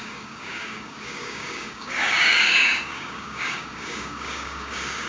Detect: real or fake fake